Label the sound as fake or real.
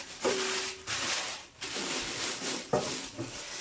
fake